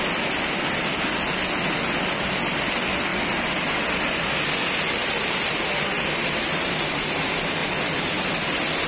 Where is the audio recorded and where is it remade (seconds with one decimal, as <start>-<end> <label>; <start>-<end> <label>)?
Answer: 0.0-3.1 recorded; 3.1-3.7 remade; 3.7-5.0 recorded; 5.0-6.9 remade; 6.9-7.6 recorded; 7.6-8.4 remade; 8.4-8.9 recorded